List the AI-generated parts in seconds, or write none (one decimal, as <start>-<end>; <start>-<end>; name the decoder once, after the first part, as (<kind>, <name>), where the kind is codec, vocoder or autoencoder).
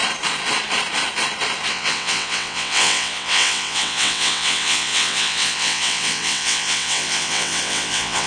1.7-8.3 (vocoder, WaveNeXt)